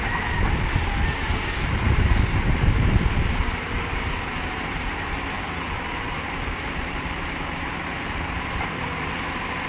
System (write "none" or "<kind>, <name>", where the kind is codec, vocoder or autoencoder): vocoder, BigVGAN v2